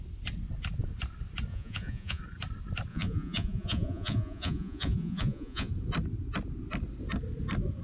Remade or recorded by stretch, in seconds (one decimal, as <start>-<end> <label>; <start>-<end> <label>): 0.0-1.5 recorded; 1.5-2.2 remade; 2.2-2.9 recorded; 2.9-5.7 remade; 5.7-7.8 recorded